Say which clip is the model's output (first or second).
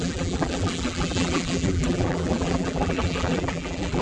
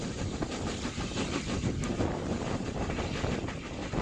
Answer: first